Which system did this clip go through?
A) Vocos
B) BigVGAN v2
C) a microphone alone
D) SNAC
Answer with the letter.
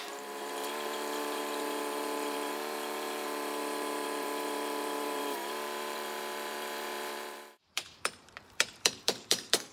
B